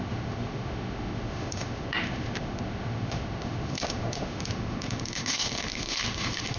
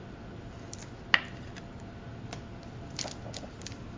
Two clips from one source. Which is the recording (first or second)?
second